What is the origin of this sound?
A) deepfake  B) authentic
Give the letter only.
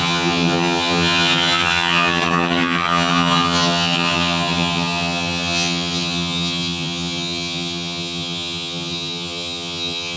A